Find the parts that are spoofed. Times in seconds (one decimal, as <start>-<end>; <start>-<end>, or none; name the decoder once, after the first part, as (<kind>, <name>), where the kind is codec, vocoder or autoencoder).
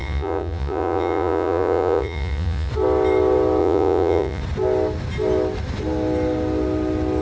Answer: 0.0-2.7 (vocoder, Vocos); 3.6-4.4